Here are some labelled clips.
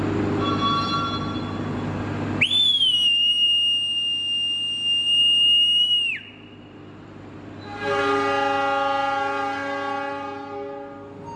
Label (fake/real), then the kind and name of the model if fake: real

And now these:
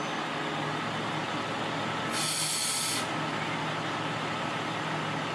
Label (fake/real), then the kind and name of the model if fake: real